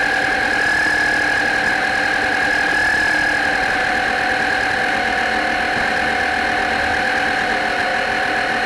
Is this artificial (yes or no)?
no